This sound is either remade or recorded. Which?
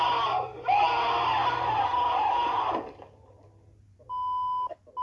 recorded